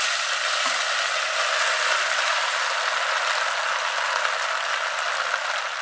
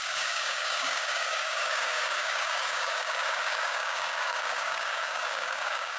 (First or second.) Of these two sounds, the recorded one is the first